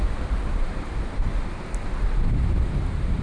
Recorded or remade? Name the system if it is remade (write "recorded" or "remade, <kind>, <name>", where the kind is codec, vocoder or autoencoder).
recorded